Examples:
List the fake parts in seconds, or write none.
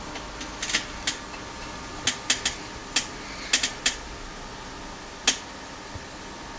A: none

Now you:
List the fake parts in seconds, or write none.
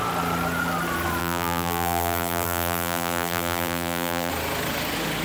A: 1.2-4.3 (vocoder, BigVGAN v2)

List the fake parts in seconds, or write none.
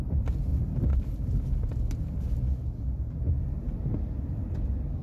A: 0.0-0.5 (vocoder, BigVGAN v2); 3.5-3.9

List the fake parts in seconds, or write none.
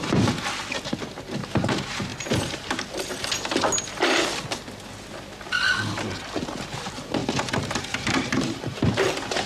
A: 2.1-3.1 (vocoder, BigVGAN v2); 7.2-8.6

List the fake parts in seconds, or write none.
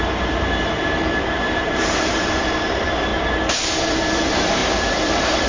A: 0.0-3.1 (vocoder, BigVGAN v2); 3.6-5.5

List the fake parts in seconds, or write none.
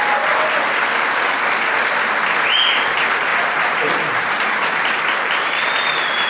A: 3.3-6.3 (vocoder, BigVGAN v2)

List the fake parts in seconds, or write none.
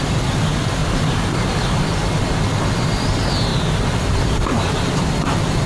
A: 0.0-0.8 (vocoder, BigVGAN v2); 2.5-3.5; 4.0-5.7